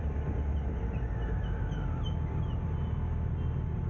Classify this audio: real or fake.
real